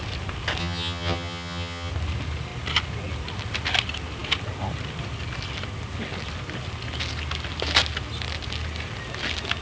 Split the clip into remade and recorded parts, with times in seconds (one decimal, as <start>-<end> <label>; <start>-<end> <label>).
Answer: 0.0-0.6 recorded; 0.6-1.9 remade; 1.9-9.6 recorded